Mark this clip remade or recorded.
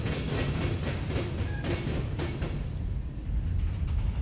recorded